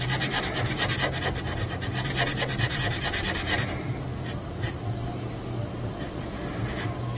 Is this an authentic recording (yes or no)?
no